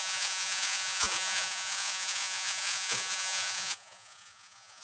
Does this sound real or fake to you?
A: fake